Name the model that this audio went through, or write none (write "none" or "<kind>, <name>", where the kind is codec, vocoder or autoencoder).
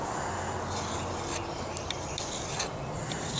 none